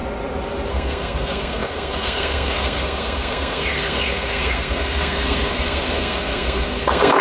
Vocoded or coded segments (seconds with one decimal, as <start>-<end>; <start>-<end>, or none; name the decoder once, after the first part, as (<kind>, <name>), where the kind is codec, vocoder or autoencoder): 0.7-7.2 (codec, SNAC)